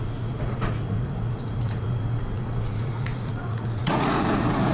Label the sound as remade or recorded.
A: remade